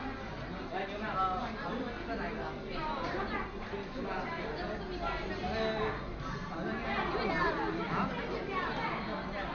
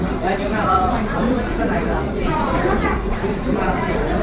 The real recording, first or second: first